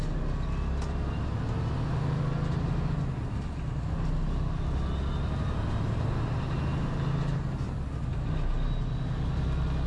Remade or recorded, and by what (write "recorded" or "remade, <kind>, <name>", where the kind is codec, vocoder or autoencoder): recorded